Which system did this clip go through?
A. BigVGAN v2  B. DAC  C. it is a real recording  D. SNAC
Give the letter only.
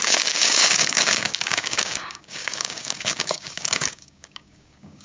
B